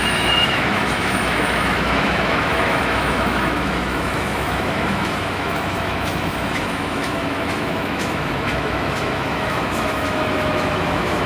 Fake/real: fake